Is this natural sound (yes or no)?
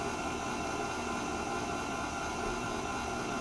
yes